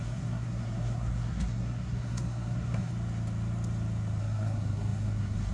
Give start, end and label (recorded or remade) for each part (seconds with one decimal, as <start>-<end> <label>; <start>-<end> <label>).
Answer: 0.0-2.9 remade; 2.9-4.2 recorded; 4.2-5.5 remade